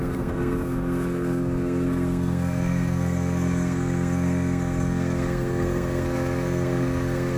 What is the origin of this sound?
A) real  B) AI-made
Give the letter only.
B